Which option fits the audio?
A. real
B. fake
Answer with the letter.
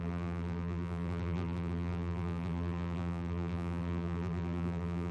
B